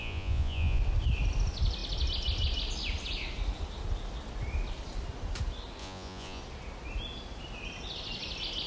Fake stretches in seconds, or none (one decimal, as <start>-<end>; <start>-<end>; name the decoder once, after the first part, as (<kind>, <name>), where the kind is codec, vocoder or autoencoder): 0.0-0.8 (vocoder, Vocos); 5.8-6.4